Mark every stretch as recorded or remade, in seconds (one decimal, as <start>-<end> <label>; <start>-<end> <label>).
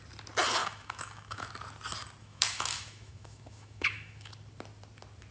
0.0-0.6 recorded; 0.6-1.5 remade; 1.5-2.2 recorded; 2.2-4.3 remade; 4.3-5.3 recorded